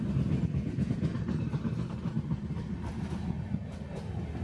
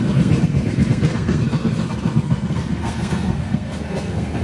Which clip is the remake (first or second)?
second